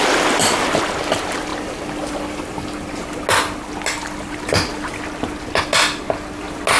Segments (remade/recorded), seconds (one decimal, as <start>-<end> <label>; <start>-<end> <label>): 0.0-6.8 recorded